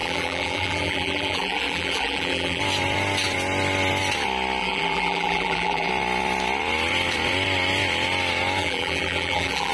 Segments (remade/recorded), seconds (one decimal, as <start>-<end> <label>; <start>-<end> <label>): 0.0-2.6 remade; 2.6-4.6 recorded; 4.6-5.9 remade; 5.9-8.6 recorded; 8.6-9.7 remade